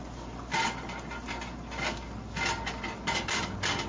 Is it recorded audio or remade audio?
recorded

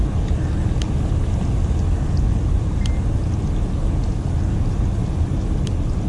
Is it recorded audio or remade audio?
recorded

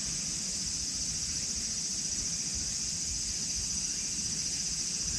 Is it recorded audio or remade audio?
recorded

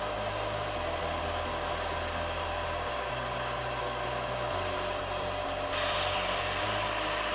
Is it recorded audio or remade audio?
recorded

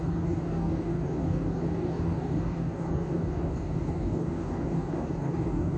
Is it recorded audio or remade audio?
remade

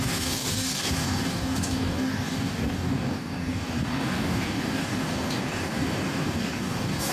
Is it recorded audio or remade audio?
remade